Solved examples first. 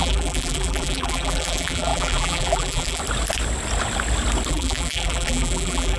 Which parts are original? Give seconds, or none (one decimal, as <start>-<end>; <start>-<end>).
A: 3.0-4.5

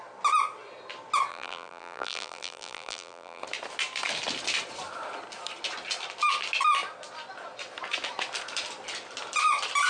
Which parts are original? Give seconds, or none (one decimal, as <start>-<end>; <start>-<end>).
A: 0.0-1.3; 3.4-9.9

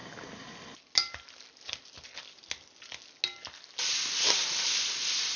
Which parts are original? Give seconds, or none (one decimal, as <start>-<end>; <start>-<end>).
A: 0.0-5.4